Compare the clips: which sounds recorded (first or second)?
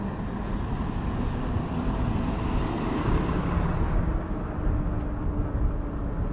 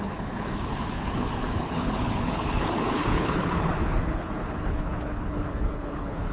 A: first